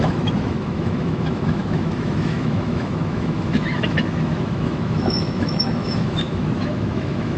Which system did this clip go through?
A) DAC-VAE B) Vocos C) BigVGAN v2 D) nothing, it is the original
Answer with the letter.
A